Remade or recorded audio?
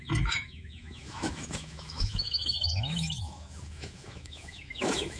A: remade